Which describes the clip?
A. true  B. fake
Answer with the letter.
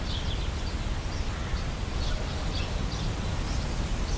A